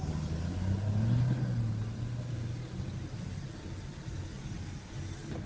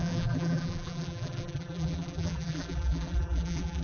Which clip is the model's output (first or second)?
second